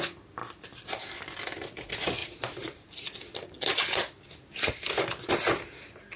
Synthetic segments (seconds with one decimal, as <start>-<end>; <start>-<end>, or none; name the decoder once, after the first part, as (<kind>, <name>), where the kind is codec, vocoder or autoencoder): 0.4-1.3 (vocoder, BigVGAN v2); 2.2-5.3